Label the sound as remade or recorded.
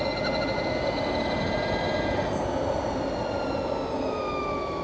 recorded